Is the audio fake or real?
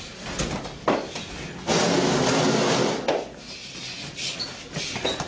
real